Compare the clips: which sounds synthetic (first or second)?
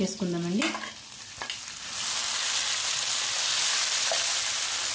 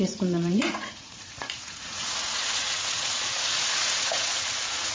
second